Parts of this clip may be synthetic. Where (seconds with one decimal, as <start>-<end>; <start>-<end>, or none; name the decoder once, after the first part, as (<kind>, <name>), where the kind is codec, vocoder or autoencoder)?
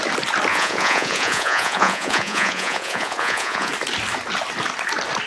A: 0.5-3.7 (vocoder, Vocos)